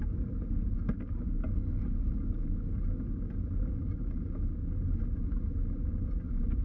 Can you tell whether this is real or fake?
real